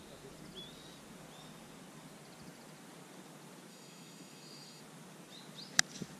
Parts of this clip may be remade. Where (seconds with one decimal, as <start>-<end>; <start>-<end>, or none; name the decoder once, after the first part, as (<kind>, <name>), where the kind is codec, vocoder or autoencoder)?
3.7-4.8 (autoencoder, DAC-VAE)